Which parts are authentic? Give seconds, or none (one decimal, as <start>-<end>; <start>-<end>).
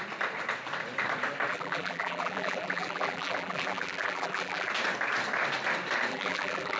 0.0-1.5; 4.7-6.1